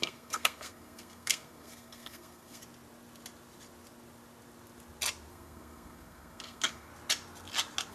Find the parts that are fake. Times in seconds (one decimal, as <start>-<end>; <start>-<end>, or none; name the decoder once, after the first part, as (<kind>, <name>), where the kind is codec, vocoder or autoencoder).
0.0-2.6 (codec, SNAC); 5.3-6.9